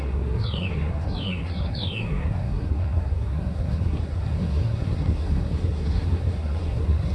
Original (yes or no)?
no